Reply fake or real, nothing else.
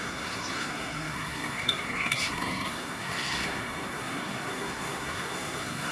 fake